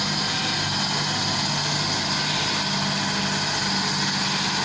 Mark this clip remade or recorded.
recorded